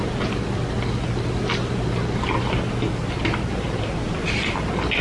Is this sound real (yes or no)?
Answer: yes